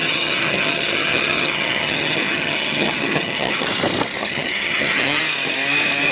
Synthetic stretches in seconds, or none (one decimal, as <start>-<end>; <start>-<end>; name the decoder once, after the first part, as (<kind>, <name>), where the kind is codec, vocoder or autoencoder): 0.0-3.7 (vocoder, HiFi-GAN); 4.2-5.2